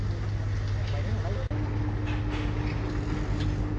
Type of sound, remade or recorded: recorded